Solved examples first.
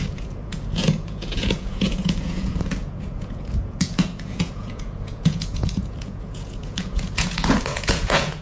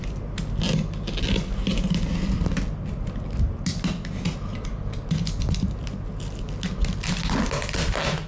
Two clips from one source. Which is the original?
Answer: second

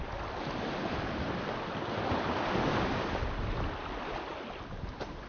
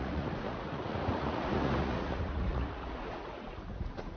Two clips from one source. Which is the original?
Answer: first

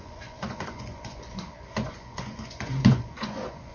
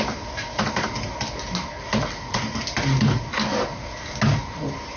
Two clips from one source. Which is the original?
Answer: second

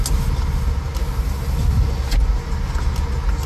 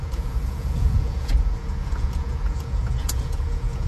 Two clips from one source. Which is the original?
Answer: first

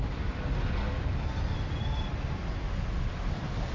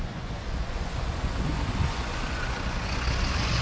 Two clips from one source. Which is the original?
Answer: first